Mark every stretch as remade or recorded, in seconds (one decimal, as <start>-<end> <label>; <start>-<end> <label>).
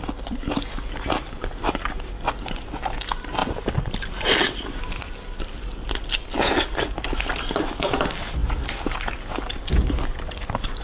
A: 0.0-10.8 recorded